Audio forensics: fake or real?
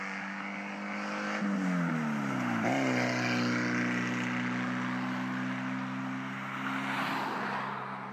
real